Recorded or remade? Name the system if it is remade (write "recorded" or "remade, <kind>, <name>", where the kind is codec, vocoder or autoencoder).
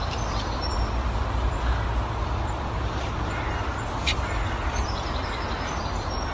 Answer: remade, vocoder, BigVGAN v2